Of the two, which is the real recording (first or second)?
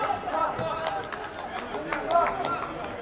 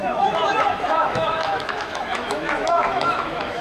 first